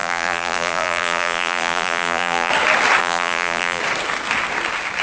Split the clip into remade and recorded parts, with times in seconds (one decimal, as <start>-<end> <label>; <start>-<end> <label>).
0.0-2.5 remade; 2.5-3.0 recorded; 3.0-3.8 remade; 3.8-5.0 recorded